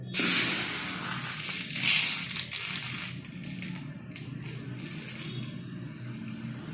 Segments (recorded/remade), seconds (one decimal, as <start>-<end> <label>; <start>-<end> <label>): 0.0-6.7 recorded

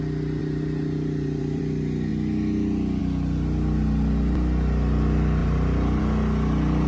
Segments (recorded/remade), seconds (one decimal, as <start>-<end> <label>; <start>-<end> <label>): 0.0-0.4 recorded; 0.4-1.6 remade; 1.6-5.4 recorded; 5.4-6.0 remade; 6.0-6.9 recorded

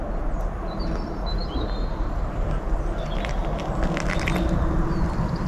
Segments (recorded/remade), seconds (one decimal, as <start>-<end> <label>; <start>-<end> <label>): 0.0-5.5 recorded

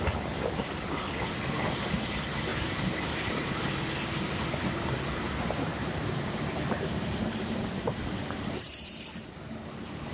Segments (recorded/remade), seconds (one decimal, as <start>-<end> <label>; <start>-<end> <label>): 0.0-2.5 recorded; 2.5-3.8 remade; 3.8-5.7 recorded; 5.7-9.5 remade; 9.5-10.1 recorded

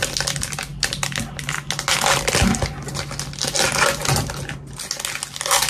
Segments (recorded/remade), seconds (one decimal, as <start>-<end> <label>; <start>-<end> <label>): 0.0-5.7 recorded

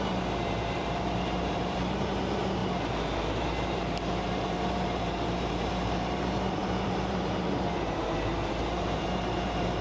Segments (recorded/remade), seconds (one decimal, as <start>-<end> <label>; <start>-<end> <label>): 0.0-2.6 remade; 2.6-3.3 recorded; 3.3-9.8 remade

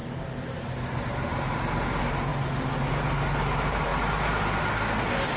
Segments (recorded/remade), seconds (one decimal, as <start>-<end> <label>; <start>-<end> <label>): 0.0-5.4 recorded

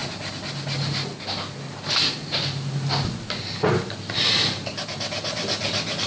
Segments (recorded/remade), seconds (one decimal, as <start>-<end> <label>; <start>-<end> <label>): 0.0-6.1 recorded